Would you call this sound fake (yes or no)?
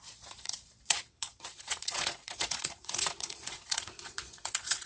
yes